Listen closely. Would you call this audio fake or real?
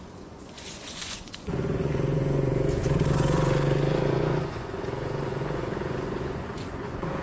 fake